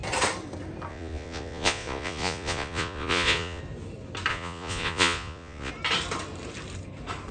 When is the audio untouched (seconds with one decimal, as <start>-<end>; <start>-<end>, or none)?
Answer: 0.0-0.9; 3.6-4.3; 5.7-7.3